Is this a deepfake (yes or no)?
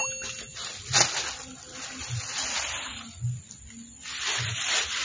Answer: no